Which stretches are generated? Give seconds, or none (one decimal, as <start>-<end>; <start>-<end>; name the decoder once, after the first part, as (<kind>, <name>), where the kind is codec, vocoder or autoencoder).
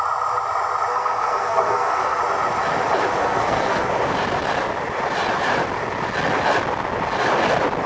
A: 0.9-2.2 (codec, SNAC); 3.2-3.9